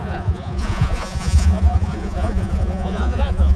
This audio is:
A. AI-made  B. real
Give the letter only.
A